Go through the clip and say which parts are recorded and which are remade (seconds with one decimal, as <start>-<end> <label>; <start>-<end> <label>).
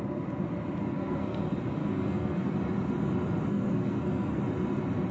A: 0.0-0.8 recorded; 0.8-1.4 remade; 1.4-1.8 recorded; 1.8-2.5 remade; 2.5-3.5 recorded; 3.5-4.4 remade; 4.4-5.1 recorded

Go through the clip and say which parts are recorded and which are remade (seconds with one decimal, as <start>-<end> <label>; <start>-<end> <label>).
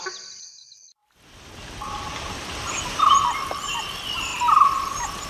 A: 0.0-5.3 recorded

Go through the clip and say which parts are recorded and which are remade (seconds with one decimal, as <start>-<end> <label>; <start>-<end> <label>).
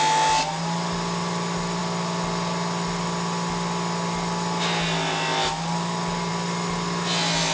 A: 0.0-7.5 recorded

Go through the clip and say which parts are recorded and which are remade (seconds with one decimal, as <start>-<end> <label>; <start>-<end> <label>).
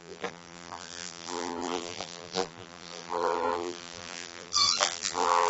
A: 0.0-5.5 remade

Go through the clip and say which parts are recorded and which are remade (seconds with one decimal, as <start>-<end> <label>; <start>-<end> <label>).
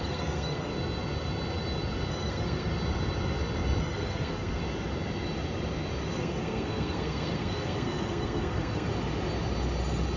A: 0.0-0.7 remade; 0.7-2.1 recorded; 2.1-2.7 remade; 2.7-3.8 recorded; 3.8-4.6 remade; 4.6-6.1 recorded; 6.1-8.9 remade; 8.9-10.2 recorded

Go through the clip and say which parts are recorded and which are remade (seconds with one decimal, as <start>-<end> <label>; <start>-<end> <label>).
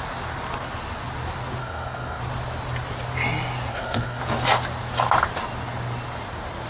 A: 0.0-1.6 recorded; 1.6-2.2 remade; 2.2-3.7 recorded; 3.7-4.2 remade; 4.2-6.7 recorded